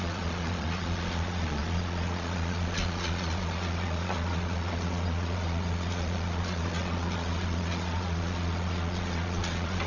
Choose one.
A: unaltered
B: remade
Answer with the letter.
B